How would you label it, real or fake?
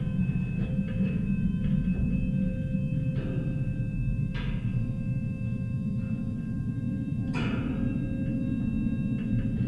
real